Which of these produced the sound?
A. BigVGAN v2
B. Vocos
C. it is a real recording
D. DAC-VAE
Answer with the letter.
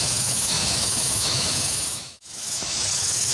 D